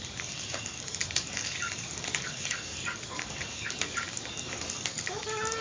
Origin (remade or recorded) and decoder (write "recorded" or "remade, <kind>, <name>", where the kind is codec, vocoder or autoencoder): remade, codec, DAC